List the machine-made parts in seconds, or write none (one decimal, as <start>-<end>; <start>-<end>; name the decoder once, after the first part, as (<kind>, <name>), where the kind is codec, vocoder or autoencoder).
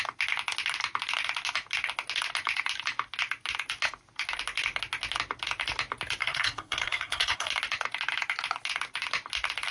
6.2-7.5 (codec, SNAC)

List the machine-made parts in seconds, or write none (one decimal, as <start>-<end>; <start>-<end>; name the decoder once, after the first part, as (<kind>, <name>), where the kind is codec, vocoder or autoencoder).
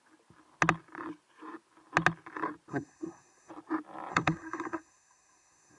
2.7-3.5 (codec, SNAC); 4.1-5.8